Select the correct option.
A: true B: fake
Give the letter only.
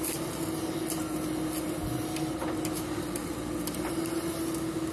A